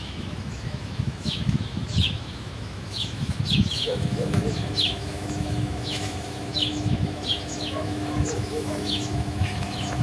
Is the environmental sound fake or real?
fake